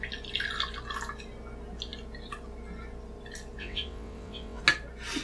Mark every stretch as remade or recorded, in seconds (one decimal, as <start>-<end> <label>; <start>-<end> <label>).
0.0-3.6 recorded; 3.6-4.6 remade; 4.6-5.2 recorded